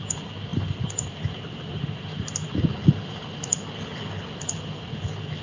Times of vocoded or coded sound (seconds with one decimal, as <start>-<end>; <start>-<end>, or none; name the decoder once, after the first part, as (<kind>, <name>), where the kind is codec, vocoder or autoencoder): 0.5-2.5 (vocoder, BigVGAN v2)